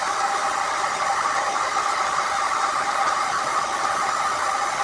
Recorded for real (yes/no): yes